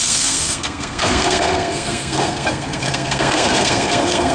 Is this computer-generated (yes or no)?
yes